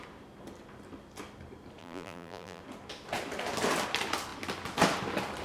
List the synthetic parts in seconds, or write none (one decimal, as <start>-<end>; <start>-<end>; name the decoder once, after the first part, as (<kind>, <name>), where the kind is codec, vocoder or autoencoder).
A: 1.8-2.6 (vocoder, BigVGAN v2)